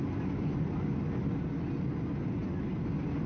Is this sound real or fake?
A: real